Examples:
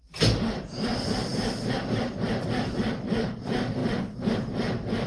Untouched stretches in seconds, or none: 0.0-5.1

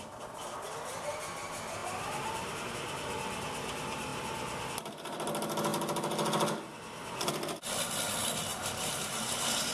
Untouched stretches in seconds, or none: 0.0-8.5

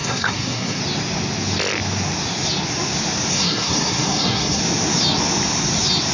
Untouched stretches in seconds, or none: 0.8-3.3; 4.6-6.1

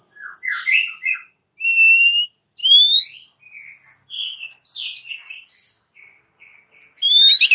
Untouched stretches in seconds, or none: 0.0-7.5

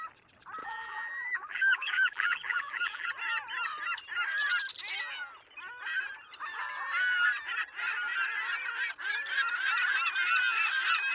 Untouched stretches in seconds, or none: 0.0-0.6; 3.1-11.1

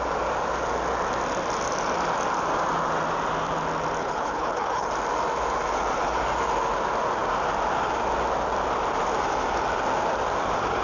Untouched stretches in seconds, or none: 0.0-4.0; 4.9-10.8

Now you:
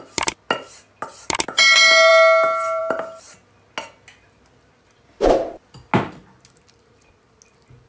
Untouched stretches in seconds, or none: 0.0-7.9